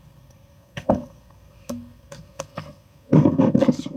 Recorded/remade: remade